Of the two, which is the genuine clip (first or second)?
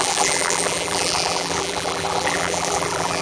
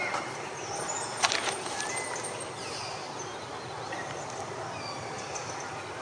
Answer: second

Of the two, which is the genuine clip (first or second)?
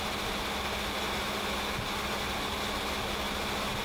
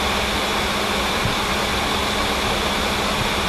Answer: first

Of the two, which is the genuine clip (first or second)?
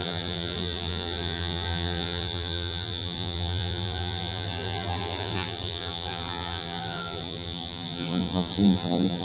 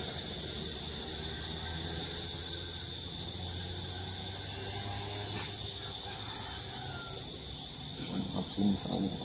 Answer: second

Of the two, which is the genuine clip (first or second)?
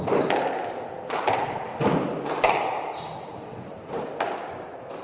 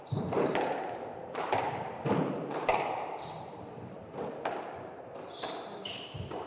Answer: first